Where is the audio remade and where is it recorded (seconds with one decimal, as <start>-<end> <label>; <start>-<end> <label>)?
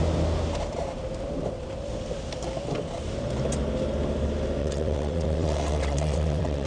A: 0.0-4.6 recorded; 4.6-6.7 remade